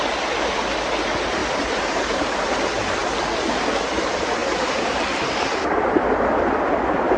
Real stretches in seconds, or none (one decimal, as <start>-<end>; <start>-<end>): 0.0-1.4; 2.5-7.2